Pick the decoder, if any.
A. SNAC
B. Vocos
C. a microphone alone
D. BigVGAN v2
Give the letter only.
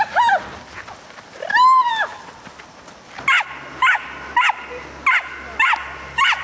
C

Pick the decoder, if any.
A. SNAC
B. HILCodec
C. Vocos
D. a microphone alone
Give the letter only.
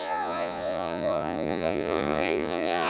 C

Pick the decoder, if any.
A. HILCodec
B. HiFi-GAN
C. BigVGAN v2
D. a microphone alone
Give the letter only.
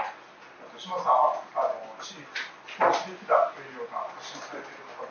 D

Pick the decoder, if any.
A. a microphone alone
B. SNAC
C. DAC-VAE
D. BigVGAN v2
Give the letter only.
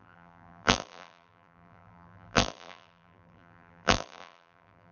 D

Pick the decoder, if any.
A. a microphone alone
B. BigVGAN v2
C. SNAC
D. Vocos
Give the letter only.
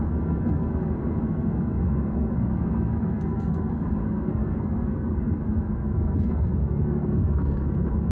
C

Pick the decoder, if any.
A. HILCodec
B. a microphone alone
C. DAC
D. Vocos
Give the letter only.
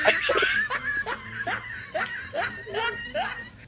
B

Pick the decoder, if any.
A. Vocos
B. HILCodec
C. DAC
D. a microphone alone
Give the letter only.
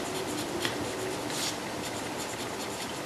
D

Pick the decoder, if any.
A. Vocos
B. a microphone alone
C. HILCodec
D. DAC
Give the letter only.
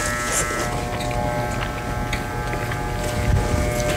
B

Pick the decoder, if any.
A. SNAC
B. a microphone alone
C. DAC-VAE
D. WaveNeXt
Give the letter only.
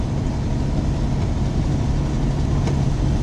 B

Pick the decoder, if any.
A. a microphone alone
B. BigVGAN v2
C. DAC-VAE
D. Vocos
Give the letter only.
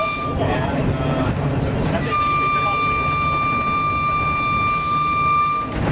A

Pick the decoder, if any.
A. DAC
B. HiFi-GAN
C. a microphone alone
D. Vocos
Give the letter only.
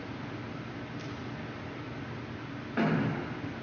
C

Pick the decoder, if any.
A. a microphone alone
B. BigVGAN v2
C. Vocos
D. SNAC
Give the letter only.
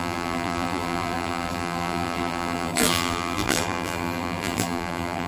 B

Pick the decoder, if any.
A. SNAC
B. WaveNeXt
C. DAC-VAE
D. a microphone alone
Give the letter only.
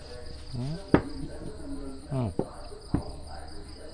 D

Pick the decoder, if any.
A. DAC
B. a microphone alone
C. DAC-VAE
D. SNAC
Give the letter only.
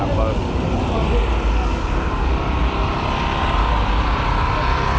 B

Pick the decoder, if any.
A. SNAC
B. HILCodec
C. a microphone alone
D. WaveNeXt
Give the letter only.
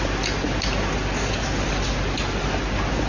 C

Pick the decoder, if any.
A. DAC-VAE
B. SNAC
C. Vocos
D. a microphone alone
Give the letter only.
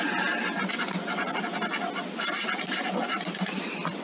D